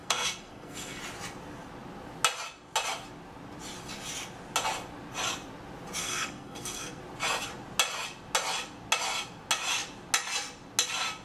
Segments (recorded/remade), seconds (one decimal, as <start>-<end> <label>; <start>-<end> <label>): 0.0-1.0 remade; 1.0-6.0 recorded; 6.0-7.0 remade; 7.0-11.2 recorded

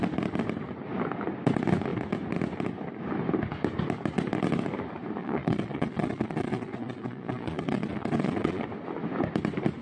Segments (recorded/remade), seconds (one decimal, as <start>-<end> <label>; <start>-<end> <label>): 0.0-5.2 recorded; 5.2-8.6 remade; 8.6-9.8 recorded

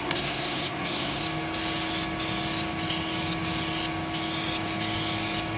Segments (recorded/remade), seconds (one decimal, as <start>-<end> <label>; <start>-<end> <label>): 0.0-1.2 remade; 1.2-5.6 recorded